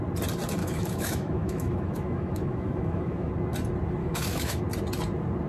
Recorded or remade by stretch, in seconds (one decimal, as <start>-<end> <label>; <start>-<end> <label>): 0.0-0.6 recorded; 0.6-3.3 remade; 3.3-4.0 recorded; 4.0-4.6 remade; 4.6-5.5 recorded